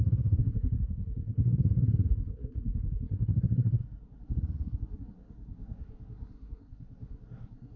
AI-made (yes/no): yes